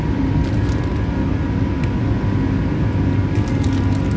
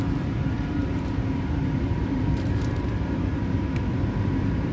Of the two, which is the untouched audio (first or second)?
first